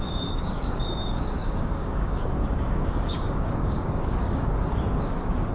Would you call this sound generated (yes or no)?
yes